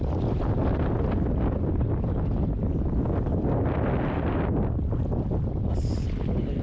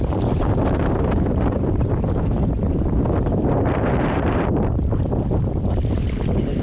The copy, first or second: second